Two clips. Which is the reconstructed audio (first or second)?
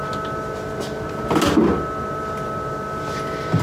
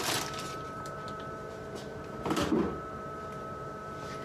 second